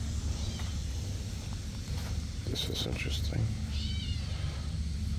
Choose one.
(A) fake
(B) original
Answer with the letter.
B